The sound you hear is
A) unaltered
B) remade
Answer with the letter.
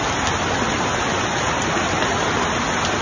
A